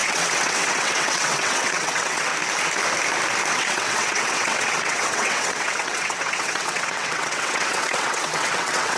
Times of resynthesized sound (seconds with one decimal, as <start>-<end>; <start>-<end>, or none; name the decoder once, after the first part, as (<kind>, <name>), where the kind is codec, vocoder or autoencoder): 0.0-2.3 (vocoder, WaveNeXt); 3.5-9.0